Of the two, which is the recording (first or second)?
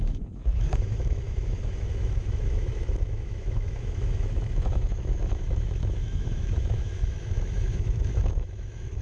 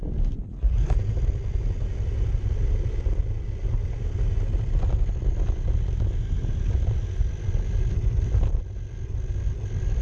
second